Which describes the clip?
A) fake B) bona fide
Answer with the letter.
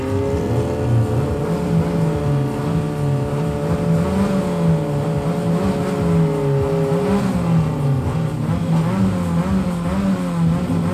B